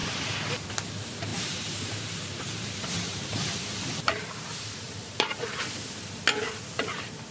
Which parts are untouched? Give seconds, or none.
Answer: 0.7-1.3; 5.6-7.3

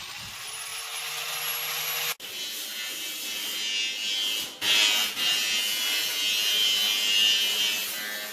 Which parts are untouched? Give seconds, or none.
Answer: 0.0-8.3

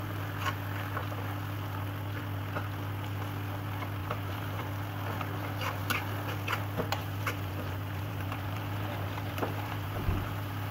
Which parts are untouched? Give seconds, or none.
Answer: 0.0-4.0; 4.7-7.0